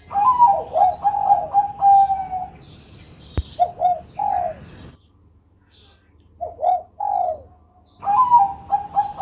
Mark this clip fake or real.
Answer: real